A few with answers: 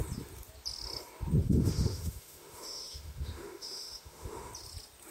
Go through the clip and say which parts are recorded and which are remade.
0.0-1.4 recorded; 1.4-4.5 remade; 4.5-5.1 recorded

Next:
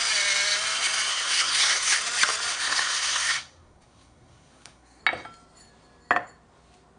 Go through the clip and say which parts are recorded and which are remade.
0.0-1.1 recorded; 1.1-2.0 remade; 2.0-2.5 recorded; 2.5-5.0 remade; 5.0-7.0 recorded

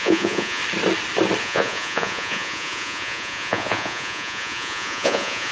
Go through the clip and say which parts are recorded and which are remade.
0.0-0.6 remade; 0.6-1.4 recorded; 1.4-5.5 remade

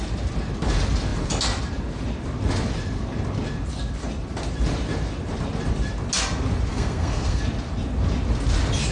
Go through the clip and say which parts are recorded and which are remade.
0.0-6.7 recorded; 6.7-7.4 remade; 7.4-8.9 recorded

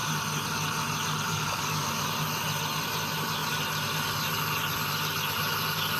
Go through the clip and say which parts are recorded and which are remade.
0.0-1.3 recorded; 1.3-1.9 remade; 1.9-6.0 recorded